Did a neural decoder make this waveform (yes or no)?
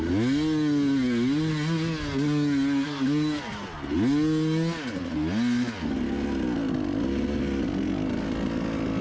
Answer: no